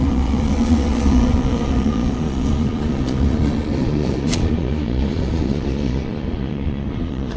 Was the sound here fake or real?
fake